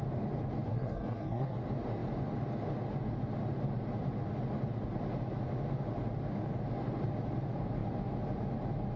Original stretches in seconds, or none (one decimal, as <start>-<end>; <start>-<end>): 0.0-0.7; 1.6-9.0